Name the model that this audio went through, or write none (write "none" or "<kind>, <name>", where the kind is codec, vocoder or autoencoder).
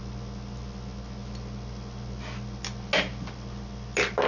none